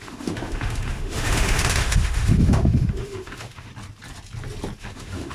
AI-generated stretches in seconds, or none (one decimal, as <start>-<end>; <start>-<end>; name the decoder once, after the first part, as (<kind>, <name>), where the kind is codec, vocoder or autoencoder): 0.0-3.7 (autoencoder, DAC-VAE); 4.8-5.3